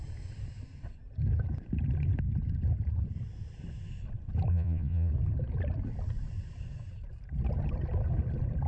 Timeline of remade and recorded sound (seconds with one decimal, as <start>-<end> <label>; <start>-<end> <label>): 0.0-4.5 recorded; 4.5-5.1 remade; 5.1-8.7 recorded